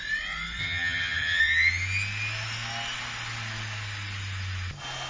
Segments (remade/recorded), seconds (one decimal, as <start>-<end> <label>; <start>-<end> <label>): 0.0-0.6 recorded; 0.6-1.4 remade; 1.4-5.1 recorded